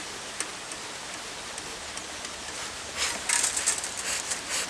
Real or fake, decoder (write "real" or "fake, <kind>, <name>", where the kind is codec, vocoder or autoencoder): real